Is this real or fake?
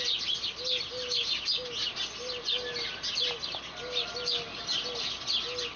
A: real